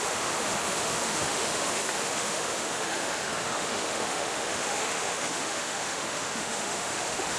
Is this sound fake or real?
fake